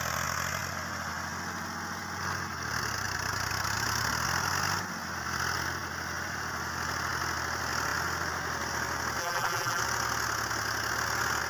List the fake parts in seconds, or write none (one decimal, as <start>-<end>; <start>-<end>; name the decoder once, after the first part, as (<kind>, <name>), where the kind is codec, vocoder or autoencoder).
9.2-9.8 (vocoder, BigVGAN v2)